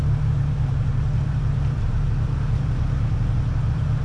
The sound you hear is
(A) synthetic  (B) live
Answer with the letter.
A